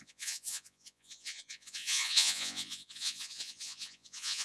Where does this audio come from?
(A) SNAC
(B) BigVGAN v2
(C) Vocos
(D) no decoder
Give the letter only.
C